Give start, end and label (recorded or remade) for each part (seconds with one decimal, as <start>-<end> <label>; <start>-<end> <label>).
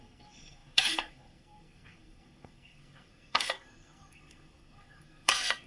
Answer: 0.0-5.7 remade